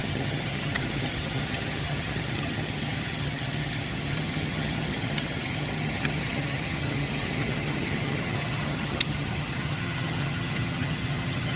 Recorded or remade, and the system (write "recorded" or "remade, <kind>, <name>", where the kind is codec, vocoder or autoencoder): remade, vocoder, HiFi-GAN